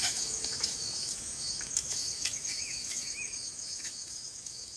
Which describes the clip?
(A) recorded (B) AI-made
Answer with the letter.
B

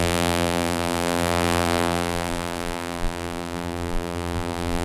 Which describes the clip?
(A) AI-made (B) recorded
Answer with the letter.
A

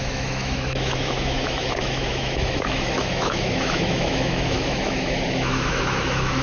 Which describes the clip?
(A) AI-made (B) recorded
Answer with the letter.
A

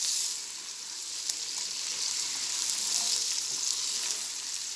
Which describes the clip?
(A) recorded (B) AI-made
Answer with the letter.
A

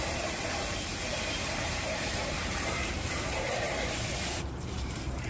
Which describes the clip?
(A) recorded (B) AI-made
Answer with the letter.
B